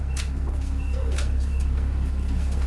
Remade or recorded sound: remade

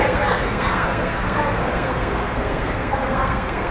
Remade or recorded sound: remade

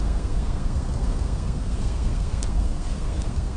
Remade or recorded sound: remade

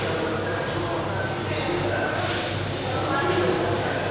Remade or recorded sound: recorded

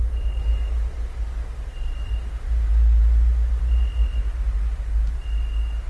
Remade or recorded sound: recorded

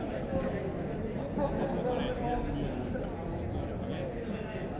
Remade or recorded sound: recorded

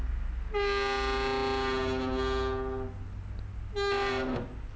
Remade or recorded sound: recorded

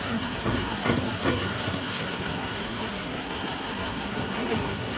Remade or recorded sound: remade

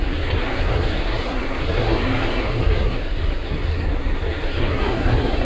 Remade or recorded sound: remade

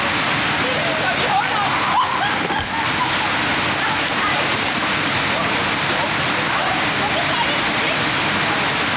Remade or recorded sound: recorded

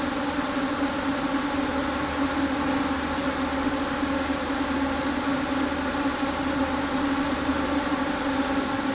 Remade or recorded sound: recorded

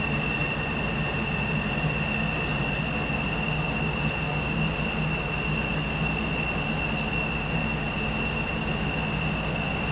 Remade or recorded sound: recorded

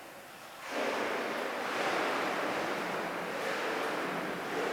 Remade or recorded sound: recorded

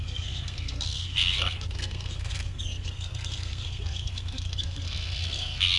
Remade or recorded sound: remade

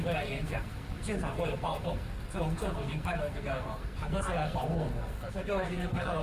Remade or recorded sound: remade